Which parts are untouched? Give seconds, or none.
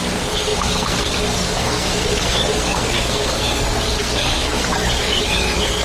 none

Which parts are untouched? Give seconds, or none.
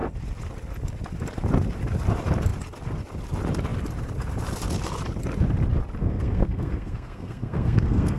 0.0-6.0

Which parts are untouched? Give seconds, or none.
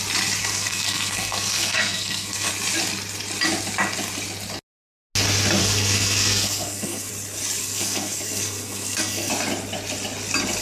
0.0-0.4; 2.5-5.6; 7.1-7.6; 9.3-10.6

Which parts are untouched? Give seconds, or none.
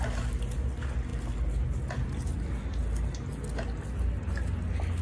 0.0-5.0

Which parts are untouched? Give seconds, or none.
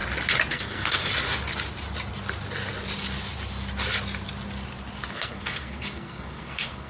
0.0-0.5; 1.0-5.1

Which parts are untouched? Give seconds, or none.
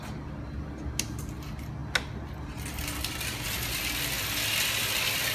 0.0-5.3